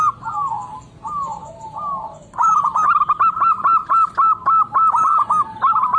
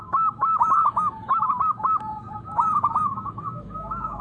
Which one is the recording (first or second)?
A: first